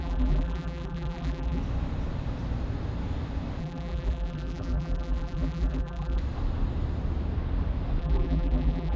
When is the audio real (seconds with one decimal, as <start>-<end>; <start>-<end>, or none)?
1.6-3.6; 6.2-8.0